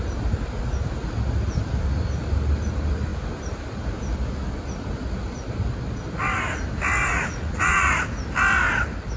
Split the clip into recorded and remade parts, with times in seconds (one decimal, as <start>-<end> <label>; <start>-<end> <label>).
0.0-7.1 recorded; 7.1-7.9 remade; 7.9-9.2 recorded